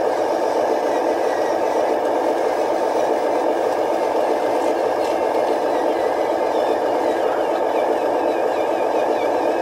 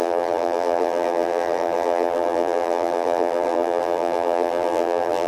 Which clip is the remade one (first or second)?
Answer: second